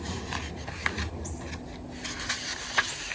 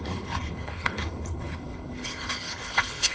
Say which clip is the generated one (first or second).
second